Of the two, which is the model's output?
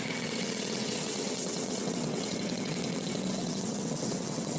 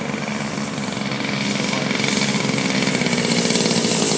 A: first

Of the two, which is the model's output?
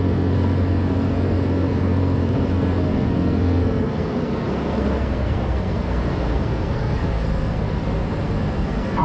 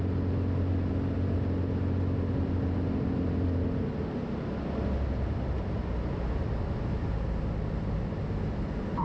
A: first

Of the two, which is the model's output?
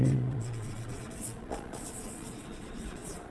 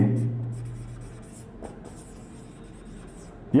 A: first